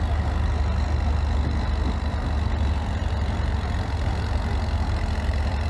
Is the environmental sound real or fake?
real